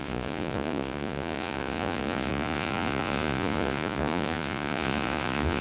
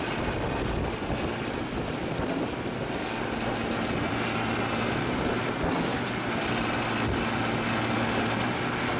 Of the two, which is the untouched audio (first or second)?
second